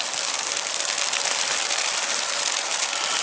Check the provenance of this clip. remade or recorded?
remade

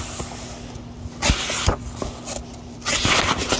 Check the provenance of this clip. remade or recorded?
recorded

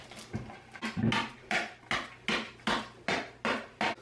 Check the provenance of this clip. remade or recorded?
recorded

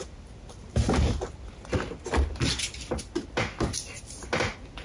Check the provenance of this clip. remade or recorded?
recorded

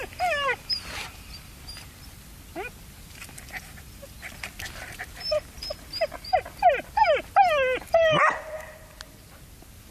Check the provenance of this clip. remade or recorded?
recorded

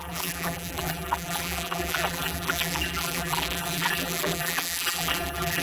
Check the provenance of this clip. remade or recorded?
remade